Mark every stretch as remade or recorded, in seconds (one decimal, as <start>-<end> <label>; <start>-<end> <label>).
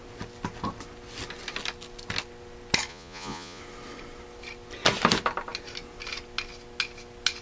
0.0-2.9 recorded; 2.9-3.6 remade; 3.6-7.4 recorded